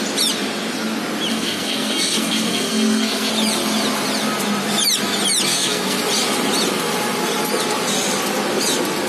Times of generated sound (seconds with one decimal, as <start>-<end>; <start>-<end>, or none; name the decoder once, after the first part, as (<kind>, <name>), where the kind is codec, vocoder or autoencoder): 1.3-3.3 (codec, SNAC); 5.5-6.0